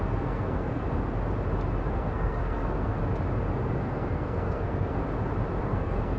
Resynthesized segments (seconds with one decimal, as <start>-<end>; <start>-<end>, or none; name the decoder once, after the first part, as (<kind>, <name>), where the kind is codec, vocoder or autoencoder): 0.0-0.8 (codec, SNAC); 1.9-3.0; 3.8-5.0; 5.6-6.2